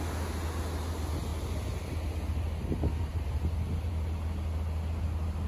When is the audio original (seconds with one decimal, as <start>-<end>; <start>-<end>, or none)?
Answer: 0.0-5.5